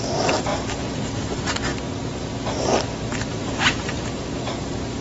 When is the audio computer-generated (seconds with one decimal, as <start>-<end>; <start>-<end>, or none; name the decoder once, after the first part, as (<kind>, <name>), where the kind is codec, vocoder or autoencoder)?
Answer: 0.5-1.0 (vocoder, BigVGAN v2); 3.3-4.5